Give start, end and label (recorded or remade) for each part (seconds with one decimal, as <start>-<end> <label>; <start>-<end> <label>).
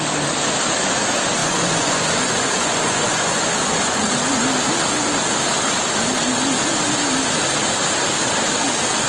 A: 0.0-1.4 recorded; 1.4-4.1 remade; 4.1-9.1 recorded